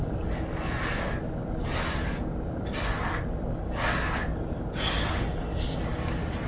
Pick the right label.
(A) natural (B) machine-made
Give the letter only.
A